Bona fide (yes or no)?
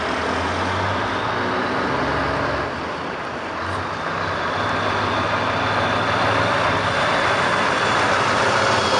yes